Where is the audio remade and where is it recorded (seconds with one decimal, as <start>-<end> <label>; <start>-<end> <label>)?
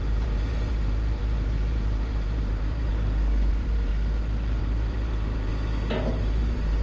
0.0-2.9 remade; 2.9-3.5 recorded; 3.5-3.9 remade; 3.9-4.6 recorded; 4.6-5.5 remade; 5.5-6.2 recorded; 6.2-6.8 remade